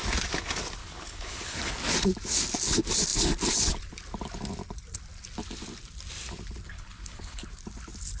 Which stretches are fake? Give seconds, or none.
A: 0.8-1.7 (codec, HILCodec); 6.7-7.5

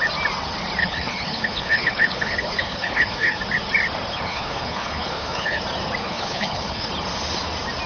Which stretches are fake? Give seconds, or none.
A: 0.8-3.4 (codec, HILCodec); 4.1-5.6; 6.0-6.9

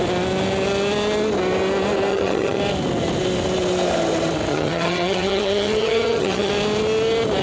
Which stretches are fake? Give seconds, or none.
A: 2.1-2.6 (vocoder, HiFi-GAN); 4.5-6.5

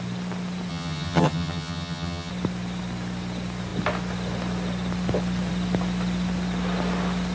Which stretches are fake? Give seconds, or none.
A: 0.7-2.3 (vocoder, HiFi-GAN)

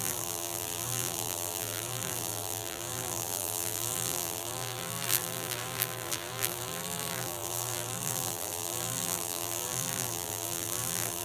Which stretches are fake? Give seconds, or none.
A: 0.0-11.2 (vocoder, BigVGAN v2)

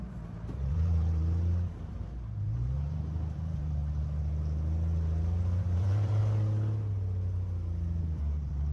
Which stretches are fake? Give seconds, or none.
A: 0.0-3.8 (vocoder, BigVGAN v2); 5.6-6.2; 8.0-8.7